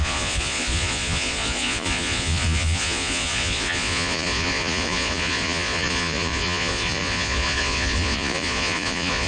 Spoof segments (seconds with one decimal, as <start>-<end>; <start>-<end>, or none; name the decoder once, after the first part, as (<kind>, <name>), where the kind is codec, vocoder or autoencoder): 0.0-9.3 (vocoder, Vocos)